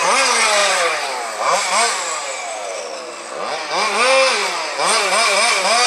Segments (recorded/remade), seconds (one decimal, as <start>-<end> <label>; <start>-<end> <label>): 0.0-0.6 recorded; 0.6-2.8 remade; 2.8-4.4 recorded; 4.4-5.5 remade; 5.5-5.9 recorded

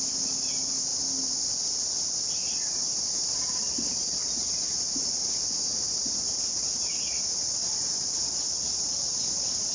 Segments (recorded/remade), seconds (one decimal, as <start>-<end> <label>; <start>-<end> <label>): 0.0-9.7 recorded

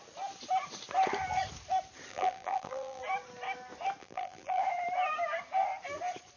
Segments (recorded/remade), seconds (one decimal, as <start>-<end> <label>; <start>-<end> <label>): 0.0-2.1 recorded; 2.1-3.0 remade; 3.0-4.0 recorded; 4.0-4.6 remade; 4.6-6.4 recorded